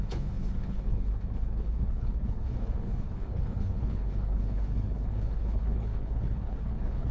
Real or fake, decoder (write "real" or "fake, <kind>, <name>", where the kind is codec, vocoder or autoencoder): fake, codec, HILCodec